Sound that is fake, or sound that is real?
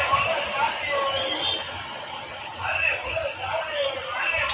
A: real